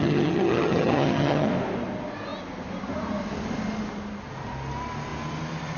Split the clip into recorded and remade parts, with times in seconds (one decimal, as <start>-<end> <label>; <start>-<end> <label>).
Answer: 0.0-1.5 remade; 1.5-5.8 recorded